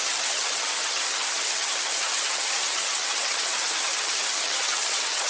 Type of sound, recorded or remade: remade